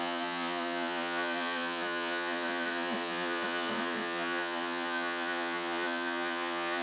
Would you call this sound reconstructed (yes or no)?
yes